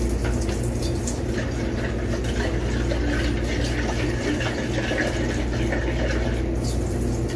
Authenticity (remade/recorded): recorded